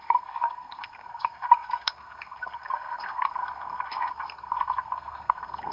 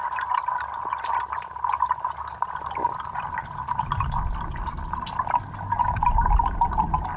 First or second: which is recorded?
second